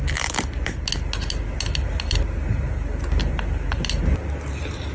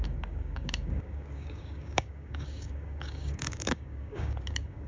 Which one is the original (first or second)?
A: first